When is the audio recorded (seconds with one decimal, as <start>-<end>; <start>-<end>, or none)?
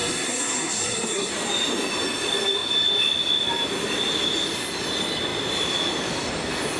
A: 1.3-6.8